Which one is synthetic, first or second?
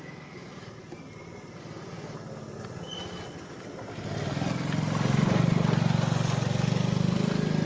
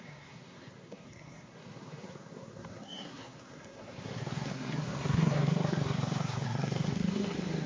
second